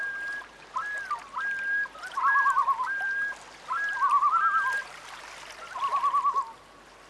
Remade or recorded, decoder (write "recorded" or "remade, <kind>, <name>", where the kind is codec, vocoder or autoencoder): recorded